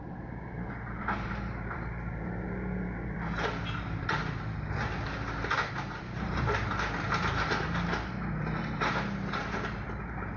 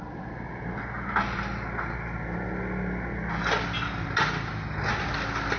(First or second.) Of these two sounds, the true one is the second